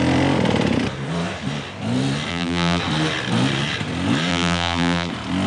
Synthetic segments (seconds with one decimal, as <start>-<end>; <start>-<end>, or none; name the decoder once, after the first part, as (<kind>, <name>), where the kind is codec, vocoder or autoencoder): 2.3-2.8 (vocoder, BigVGAN v2); 4.3-5.1